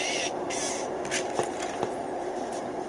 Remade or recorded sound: recorded